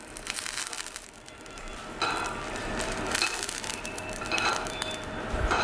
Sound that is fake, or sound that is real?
fake